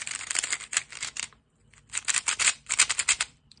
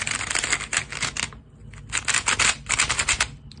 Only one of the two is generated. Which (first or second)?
first